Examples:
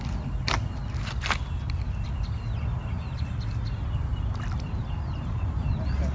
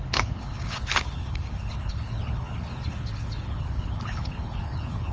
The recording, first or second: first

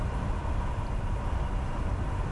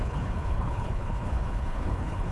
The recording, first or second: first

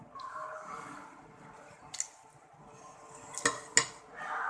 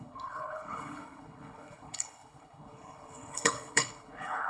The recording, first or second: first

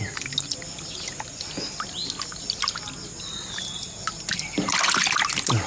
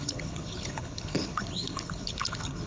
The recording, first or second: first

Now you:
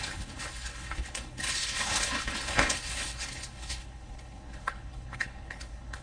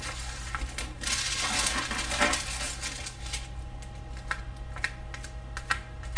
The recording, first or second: second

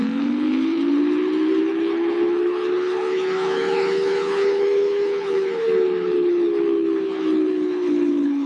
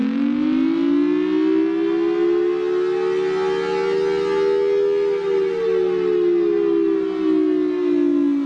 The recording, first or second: second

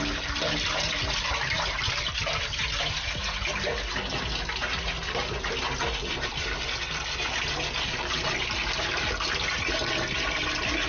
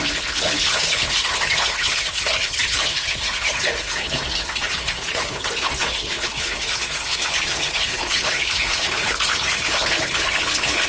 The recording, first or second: first